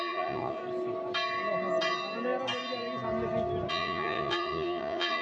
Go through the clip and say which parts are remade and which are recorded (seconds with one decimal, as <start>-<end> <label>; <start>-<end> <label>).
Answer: 0.0-0.6 remade; 0.6-3.7 recorded; 3.7-5.2 remade